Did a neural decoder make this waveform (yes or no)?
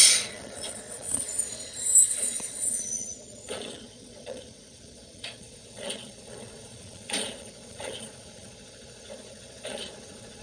yes